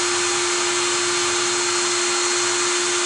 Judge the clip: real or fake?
real